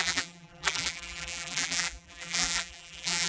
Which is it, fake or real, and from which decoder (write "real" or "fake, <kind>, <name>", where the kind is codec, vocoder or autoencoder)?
fake, vocoder, BigVGAN v2